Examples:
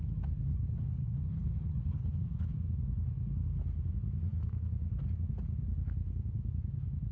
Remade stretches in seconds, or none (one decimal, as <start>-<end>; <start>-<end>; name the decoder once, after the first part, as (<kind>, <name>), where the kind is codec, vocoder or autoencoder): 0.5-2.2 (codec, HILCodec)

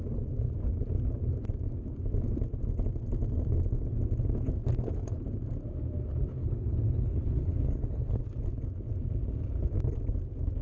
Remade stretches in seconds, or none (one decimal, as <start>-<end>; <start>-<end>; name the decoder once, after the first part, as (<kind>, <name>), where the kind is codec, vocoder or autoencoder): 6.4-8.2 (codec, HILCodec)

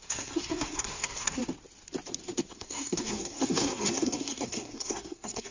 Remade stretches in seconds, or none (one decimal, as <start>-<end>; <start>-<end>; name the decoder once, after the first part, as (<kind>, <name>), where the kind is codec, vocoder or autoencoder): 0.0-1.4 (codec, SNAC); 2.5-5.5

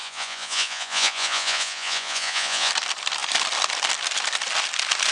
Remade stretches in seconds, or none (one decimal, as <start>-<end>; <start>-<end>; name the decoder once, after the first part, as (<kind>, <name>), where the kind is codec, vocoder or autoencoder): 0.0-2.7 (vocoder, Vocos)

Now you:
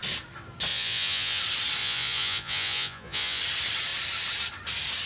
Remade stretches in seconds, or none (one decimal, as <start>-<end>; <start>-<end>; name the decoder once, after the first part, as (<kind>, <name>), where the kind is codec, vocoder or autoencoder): 0.7-1.4 (vocoder, Vocos); 1.8-3.4

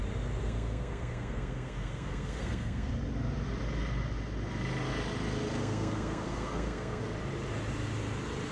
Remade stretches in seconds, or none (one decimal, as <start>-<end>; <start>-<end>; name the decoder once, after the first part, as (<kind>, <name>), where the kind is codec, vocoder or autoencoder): 0.4-2.9 (codec, SNAC); 5.6-7.0

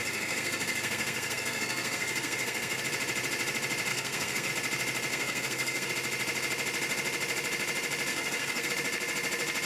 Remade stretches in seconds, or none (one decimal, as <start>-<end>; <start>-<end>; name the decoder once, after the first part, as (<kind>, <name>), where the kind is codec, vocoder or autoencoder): 0.0-2.8 (codec, SNAC); 3.9-4.5; 5.1-5.9; 8.1-8.7